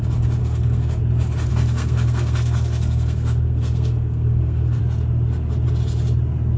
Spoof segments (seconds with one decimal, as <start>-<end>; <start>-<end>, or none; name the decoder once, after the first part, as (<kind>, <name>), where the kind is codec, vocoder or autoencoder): 0.4-1.0 (codec, SNAC); 1.5-4.8